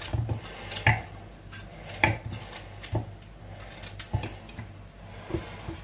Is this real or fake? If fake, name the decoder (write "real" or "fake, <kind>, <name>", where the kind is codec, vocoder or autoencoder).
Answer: fake, vocoder, BigVGAN v2